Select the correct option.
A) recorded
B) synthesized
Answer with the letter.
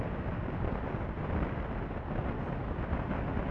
A